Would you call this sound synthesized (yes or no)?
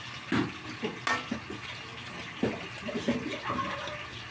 no